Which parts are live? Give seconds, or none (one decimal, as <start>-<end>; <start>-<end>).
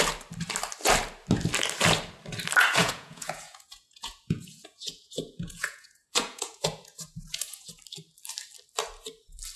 0.0-2.8; 7.8-9.6